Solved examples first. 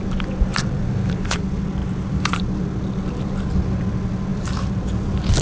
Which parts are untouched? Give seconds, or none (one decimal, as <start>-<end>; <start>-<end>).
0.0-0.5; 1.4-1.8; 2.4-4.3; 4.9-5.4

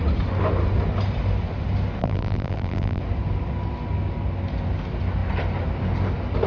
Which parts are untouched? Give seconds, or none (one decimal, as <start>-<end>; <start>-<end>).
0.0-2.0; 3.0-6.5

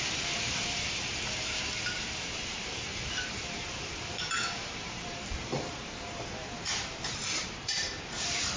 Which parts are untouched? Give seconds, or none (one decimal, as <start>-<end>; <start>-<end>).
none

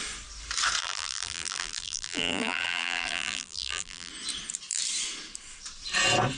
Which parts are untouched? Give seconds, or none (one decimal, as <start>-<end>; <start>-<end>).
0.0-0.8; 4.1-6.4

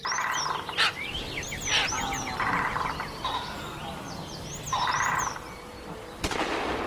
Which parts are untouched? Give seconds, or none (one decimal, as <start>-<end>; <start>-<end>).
0.0-6.9